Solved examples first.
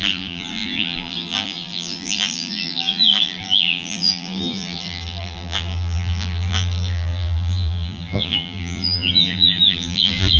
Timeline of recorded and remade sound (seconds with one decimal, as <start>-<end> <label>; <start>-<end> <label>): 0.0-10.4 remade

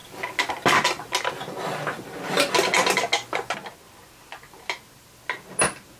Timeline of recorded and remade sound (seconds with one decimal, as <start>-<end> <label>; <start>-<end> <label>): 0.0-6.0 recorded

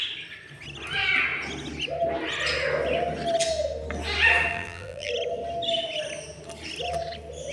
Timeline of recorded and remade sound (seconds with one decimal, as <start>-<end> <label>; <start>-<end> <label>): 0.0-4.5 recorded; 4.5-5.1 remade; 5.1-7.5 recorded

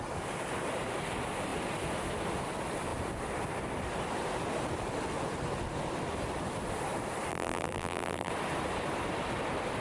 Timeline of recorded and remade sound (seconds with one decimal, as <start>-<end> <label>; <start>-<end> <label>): 0.0-7.3 recorded; 7.3-8.3 remade; 8.3-9.8 recorded